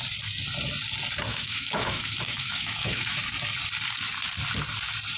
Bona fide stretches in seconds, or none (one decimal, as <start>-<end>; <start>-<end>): 0.0-1.3; 3.2-5.2